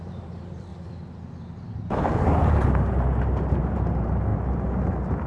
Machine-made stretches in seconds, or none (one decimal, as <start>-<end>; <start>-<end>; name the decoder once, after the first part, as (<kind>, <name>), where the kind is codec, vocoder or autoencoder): 0.0-0.7 (vocoder, BigVGAN v2); 1.8-4.3